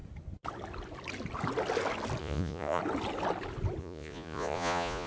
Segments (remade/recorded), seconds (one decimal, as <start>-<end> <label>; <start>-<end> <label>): 0.0-2.2 recorded; 2.2-2.8 remade; 2.8-3.8 recorded; 3.8-5.1 remade